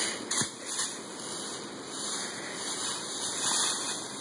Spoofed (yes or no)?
no